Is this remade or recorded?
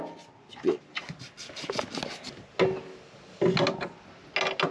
recorded